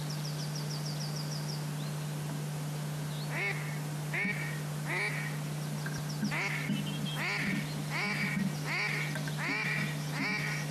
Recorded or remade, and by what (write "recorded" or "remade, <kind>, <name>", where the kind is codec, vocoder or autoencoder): recorded